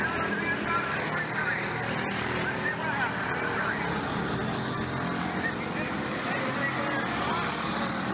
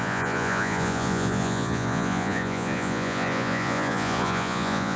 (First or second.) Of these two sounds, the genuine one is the first